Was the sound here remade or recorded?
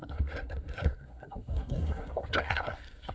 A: remade